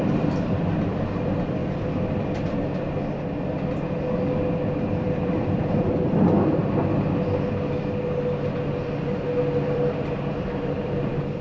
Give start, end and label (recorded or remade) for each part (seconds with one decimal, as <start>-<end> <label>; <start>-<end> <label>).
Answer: 0.0-1.6 remade; 1.6-4.9 recorded; 4.9-6.6 remade; 6.6-9.4 recorded; 9.4-11.4 remade